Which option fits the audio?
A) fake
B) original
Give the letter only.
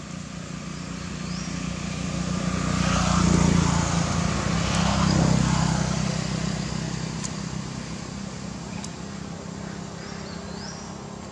B